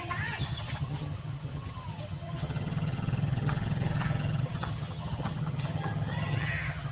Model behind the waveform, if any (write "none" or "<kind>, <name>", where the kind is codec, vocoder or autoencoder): vocoder, HiFi-GAN